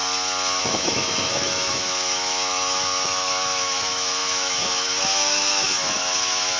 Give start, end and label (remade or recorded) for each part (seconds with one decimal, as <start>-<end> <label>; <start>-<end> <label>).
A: 0.0-0.6 recorded; 0.6-6.6 remade